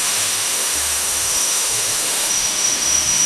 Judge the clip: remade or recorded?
remade